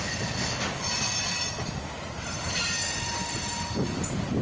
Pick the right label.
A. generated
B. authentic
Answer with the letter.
B